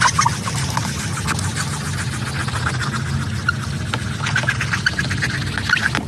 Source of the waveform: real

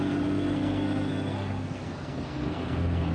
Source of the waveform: fake